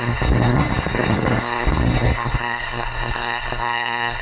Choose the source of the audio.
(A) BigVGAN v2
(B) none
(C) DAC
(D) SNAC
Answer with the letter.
D